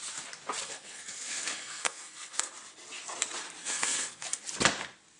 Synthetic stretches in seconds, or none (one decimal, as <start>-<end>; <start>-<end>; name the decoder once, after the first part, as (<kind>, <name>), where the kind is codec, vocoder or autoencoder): 0.6-2.5 (codec, SNAC); 3.6-4.4